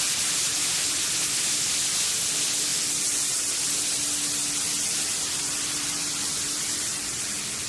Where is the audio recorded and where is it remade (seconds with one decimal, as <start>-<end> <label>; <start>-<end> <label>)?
0.0-2.7 recorded; 2.7-3.2 remade; 3.2-7.7 recorded